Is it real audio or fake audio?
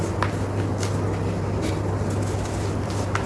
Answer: real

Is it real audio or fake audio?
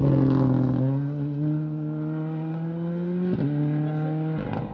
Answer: real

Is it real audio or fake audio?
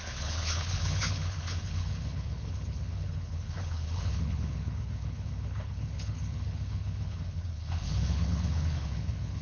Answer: fake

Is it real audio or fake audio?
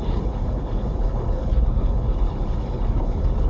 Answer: fake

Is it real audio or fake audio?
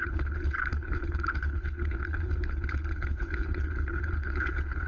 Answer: fake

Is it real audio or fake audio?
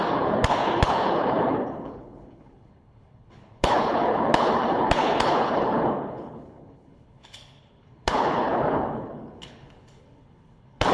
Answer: fake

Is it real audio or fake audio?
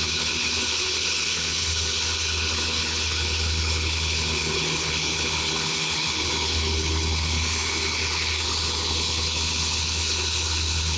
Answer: fake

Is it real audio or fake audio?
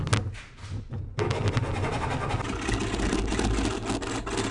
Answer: real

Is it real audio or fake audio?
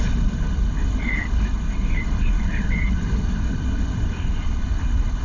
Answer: fake